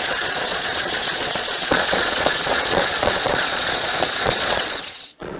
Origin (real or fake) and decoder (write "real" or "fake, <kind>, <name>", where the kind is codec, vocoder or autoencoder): fake, vocoder, Vocos